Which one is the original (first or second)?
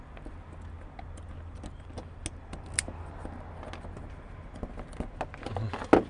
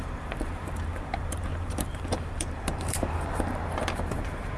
first